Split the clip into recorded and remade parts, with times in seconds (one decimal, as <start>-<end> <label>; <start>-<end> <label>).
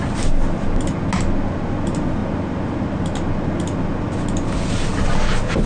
0.0-5.7 recorded